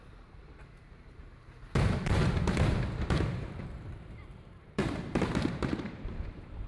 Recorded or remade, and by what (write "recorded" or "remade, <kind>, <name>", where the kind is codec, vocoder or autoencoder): remade, vocoder, BigVGAN v2